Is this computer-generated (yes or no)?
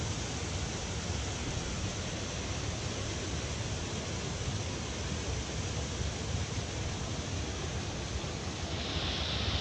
no